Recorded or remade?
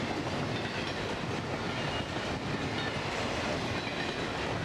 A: recorded